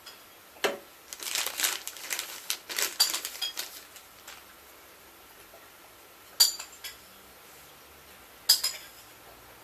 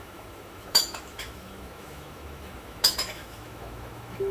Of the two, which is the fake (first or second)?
second